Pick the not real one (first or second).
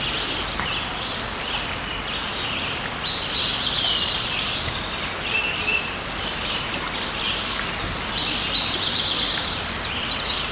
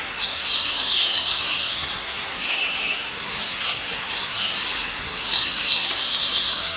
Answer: second